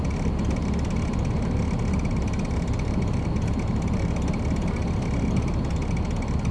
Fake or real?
real